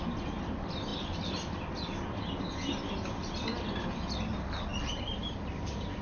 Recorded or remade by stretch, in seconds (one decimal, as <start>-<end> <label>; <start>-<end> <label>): 0.0-6.0 recorded